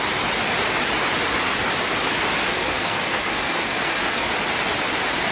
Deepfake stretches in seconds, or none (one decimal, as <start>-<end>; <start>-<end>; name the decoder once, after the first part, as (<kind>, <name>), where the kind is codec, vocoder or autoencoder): 2.4-4.3 (codec, SNAC)